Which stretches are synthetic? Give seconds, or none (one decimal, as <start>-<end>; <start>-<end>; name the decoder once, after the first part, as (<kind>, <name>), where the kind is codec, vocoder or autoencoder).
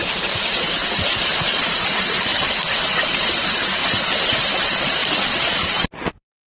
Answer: 0.0-2.3 (vocoder, BigVGAN v2); 2.9-3.8; 4.4-5.0; 6.0-6.5